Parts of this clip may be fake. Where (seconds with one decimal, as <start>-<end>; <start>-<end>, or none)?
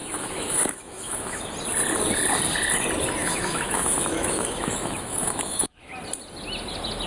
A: 0.0-1.4; 3.2-5.9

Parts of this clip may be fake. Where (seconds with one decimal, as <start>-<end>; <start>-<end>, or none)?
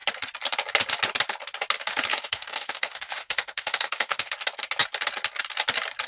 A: 2.1-4.3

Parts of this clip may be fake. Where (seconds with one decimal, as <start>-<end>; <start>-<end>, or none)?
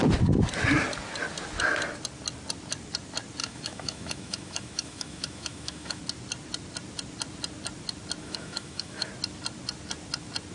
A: 3.4-6.0; 8.2-9.1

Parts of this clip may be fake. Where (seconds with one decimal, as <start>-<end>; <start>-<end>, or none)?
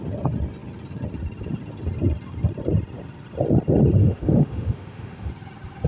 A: 4.0-5.3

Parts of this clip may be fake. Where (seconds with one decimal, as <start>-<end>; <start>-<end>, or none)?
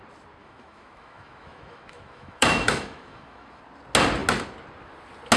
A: 0.4-3.6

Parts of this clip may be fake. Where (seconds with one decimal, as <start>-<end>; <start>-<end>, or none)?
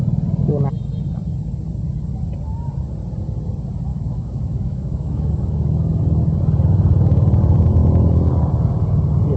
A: 3.9-6.0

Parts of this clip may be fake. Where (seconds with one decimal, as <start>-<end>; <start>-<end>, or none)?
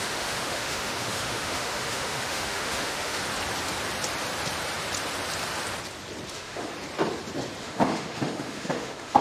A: 0.0-3.2; 6.3-6.7; 7.6-9.2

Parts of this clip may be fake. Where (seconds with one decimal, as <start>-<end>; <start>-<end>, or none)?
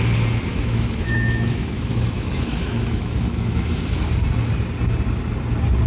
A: 0.5-4.0